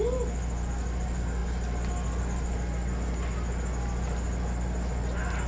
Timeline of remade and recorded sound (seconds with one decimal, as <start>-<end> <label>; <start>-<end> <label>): 0.0-5.5 recorded